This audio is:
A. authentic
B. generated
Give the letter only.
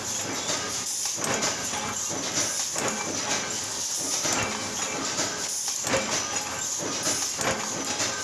A